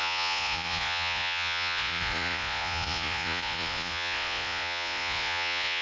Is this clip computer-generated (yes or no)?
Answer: yes